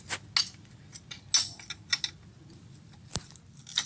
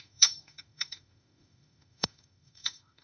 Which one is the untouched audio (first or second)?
first